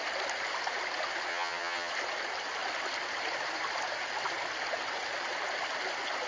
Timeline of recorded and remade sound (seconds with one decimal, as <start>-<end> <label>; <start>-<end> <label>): 0.0-1.3 recorded; 1.3-1.9 remade; 1.9-6.3 recorded